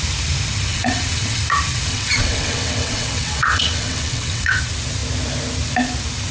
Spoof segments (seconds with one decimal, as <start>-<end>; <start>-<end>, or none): 0.7-1.4; 1.9-4.6